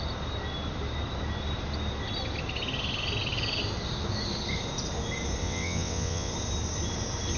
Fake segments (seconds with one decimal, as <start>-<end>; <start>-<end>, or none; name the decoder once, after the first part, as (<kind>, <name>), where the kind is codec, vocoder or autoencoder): 5.4-6.3 (vocoder, WaveNeXt)